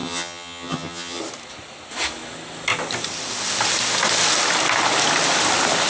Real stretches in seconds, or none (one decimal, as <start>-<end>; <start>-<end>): 1.2-5.9